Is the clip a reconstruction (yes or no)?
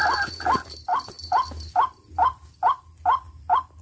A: no